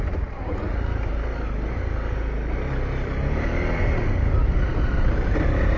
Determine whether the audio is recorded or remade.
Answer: recorded